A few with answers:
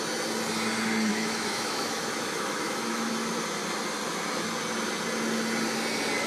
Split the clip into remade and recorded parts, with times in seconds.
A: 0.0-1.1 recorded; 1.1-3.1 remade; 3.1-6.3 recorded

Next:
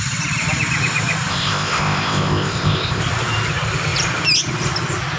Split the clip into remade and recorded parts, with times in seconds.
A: 0.0-1.3 recorded; 1.3-3.0 remade; 3.0-5.2 recorded